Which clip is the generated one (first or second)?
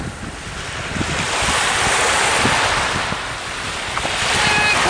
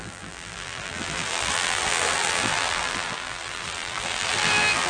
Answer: second